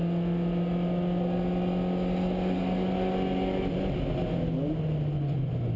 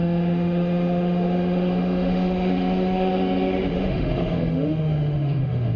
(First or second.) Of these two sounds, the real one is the first